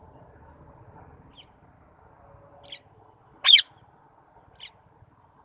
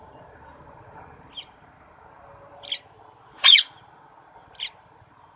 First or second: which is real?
first